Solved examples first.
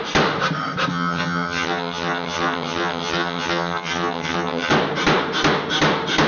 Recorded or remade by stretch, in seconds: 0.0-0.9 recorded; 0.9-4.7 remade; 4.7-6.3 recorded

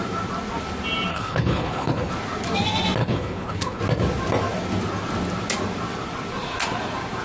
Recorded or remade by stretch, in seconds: 0.0-1.1 recorded; 1.1-2.1 remade; 2.1-3.0 recorded; 3.0-3.8 remade; 3.8-7.2 recorded

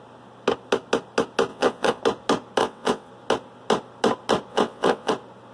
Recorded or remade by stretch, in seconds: 0.0-1.5 recorded; 1.5-2.0 remade; 2.0-2.6 recorded; 2.6-3.1 remade; 3.1-4.5 recorded; 4.5-5.1 remade; 5.1-5.5 recorded